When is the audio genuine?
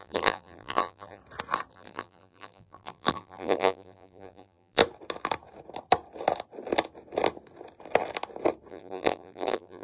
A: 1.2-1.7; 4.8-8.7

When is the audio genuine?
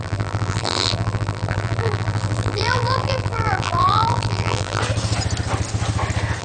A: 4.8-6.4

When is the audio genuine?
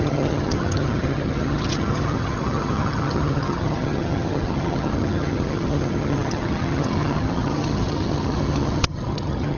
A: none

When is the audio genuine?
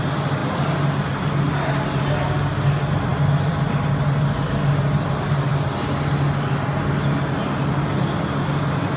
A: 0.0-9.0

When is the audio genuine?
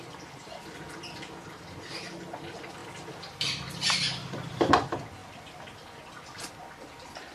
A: 0.0-2.8; 4.7-7.3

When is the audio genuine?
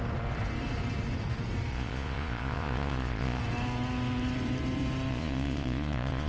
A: 0.0-1.7; 3.4-5.1